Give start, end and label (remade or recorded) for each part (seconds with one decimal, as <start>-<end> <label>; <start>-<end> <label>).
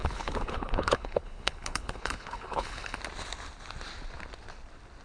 0.0-3.0 remade; 3.0-5.0 recorded